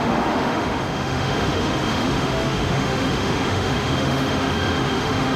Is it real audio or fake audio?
fake